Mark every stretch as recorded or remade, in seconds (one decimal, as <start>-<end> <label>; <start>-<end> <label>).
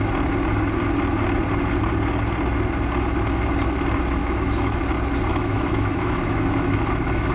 0.0-4.2 recorded; 4.2-4.8 remade; 4.8-5.3 recorded; 5.3-7.3 remade